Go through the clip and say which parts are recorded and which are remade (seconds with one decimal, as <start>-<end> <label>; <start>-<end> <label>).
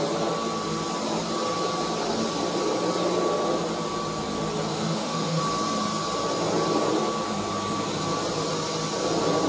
0.0-4.7 recorded; 4.7-5.4 remade; 5.4-9.5 recorded